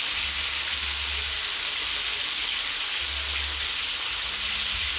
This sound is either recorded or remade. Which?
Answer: recorded